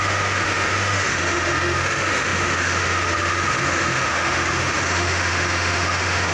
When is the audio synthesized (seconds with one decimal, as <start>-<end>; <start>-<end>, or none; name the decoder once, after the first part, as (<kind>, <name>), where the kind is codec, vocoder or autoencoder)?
0.0-6.3 (autoencoder, DAC-VAE)